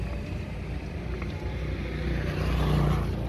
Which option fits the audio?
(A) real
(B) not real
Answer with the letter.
A